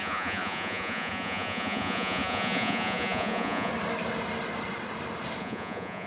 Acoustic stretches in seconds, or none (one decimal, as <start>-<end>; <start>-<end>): 3.7-5.4